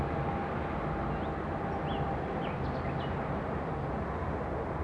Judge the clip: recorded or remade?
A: recorded